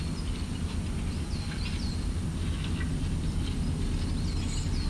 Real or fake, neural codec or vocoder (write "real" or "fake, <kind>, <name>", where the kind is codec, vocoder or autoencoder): real